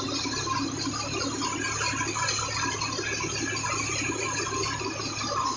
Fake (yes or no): no